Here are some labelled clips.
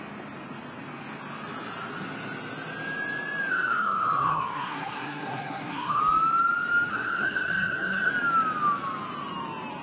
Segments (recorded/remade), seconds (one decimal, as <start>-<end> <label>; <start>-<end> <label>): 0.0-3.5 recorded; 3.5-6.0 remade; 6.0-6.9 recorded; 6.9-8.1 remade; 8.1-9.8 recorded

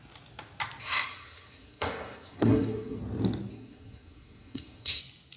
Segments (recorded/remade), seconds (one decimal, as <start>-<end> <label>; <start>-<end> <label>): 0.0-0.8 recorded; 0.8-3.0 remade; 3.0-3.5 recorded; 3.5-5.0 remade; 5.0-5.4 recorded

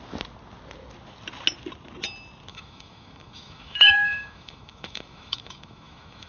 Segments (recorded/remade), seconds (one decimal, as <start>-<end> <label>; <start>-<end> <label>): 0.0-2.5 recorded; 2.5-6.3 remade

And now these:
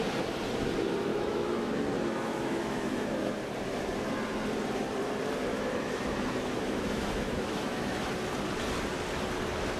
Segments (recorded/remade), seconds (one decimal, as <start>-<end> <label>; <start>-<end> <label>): 0.0-1.1 recorded; 1.1-1.7 remade; 1.7-2.3 recorded; 2.3-3.3 remade; 3.3-5.5 recorded; 5.5-8.1 remade; 8.1-9.8 recorded

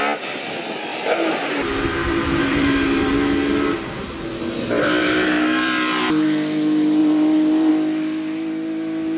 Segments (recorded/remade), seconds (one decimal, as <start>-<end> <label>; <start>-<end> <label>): 0.0-0.9 recorded; 0.9-3.1 remade; 3.1-5.0 recorded; 5.0-6.1 remade; 6.1-7.0 recorded; 7.0-7.7 remade; 7.7-9.2 recorded